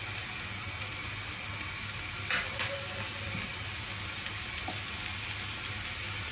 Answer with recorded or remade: recorded